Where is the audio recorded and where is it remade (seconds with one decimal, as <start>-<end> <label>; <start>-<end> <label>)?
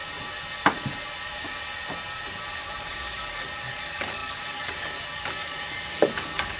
0.0-2.5 recorded; 2.5-6.6 remade